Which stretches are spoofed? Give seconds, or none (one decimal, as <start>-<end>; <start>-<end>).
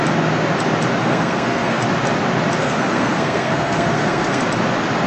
1.0-1.8; 2.6-4.4